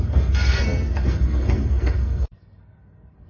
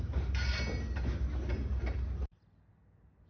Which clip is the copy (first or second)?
first